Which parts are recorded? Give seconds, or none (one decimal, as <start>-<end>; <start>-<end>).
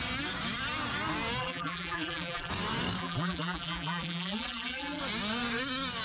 0.0-1.4; 2.5-3.0; 5.0-6.0